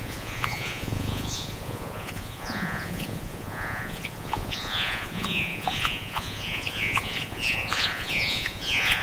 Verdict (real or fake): fake